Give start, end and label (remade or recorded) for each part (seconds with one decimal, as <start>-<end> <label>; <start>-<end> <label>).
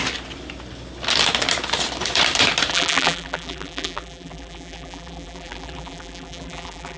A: 0.0-2.7 recorded; 2.7-7.0 remade